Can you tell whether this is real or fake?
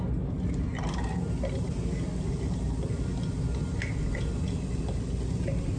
real